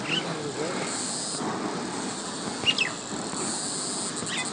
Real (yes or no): yes